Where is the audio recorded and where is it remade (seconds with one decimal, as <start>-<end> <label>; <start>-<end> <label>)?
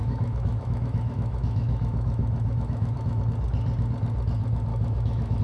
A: 0.0-3.2 remade; 3.2-4.7 recorded; 4.7-5.4 remade